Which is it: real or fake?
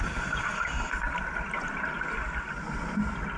real